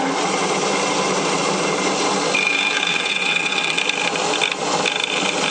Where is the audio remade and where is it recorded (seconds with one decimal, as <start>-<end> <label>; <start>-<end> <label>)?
0.0-2.9 recorded; 2.9-3.8 remade; 3.8-5.5 recorded